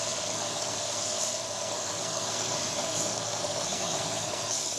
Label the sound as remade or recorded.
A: remade